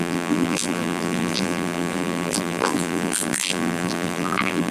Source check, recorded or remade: remade